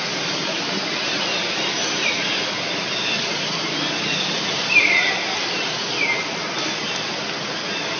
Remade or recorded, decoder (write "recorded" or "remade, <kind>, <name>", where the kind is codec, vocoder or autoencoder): recorded